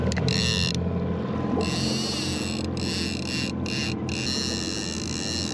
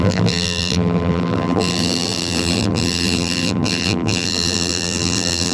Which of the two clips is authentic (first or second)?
first